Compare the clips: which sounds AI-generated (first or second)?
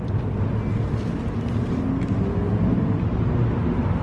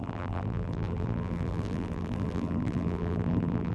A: second